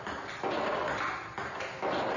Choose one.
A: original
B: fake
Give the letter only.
A